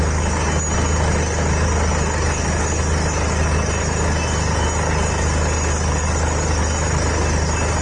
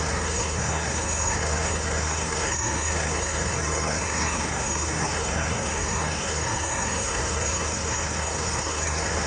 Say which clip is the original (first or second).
first